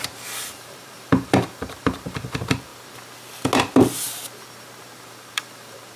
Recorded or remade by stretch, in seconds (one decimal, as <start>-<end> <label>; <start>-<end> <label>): 0.0-2.7 remade; 2.7-5.1 recorded; 5.1-6.0 remade